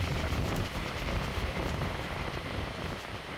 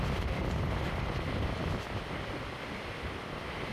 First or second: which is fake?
first